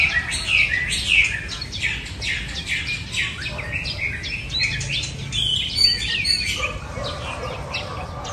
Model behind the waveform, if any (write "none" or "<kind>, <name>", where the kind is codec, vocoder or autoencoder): none